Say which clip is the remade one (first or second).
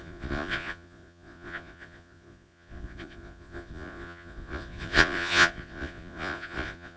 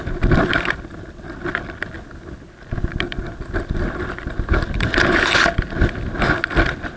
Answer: first